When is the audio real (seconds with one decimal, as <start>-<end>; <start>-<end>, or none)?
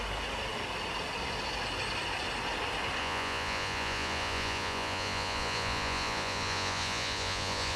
0.0-3.0